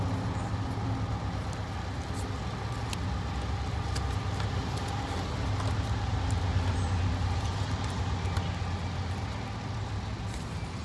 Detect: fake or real real